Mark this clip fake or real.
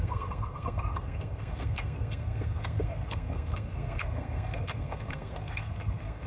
fake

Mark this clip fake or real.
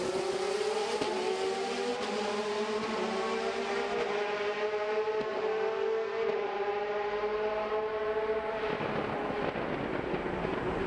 real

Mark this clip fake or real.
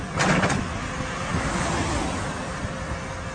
real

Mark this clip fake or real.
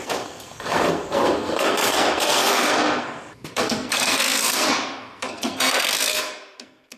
fake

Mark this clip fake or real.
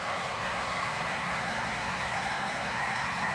fake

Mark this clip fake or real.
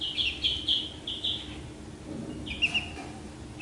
real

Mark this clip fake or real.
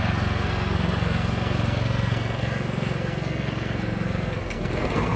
fake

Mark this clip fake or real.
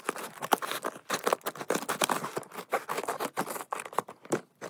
real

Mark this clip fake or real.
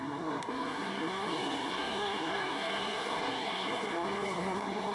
fake